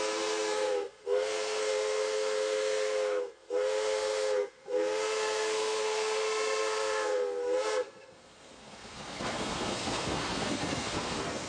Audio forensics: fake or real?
fake